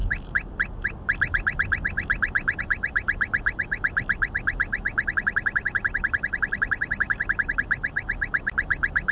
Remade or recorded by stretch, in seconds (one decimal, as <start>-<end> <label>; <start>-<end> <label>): 0.0-9.1 recorded